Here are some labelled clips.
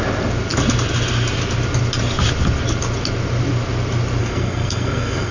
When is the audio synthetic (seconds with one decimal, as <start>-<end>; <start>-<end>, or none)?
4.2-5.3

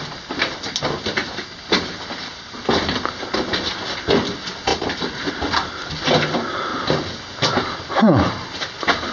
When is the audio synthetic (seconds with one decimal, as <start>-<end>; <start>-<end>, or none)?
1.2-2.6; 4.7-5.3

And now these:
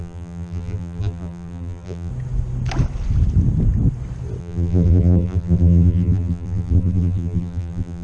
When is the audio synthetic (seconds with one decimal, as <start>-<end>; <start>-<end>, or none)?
0.0-2.1; 4.4-8.0